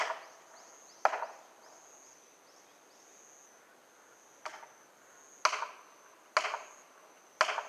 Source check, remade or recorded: recorded